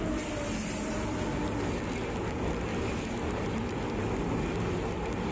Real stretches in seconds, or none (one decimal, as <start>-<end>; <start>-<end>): 0.0-2.7; 3.4-5.3